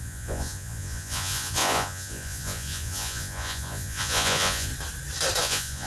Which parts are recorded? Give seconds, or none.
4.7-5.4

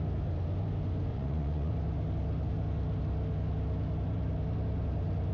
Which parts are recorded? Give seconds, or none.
0.0-1.1; 1.7-5.3

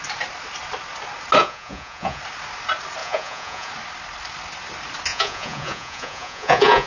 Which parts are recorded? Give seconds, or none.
0.0-1.4; 2.2-3.0; 3.7-5.1